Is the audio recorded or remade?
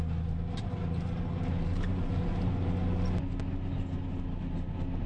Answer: recorded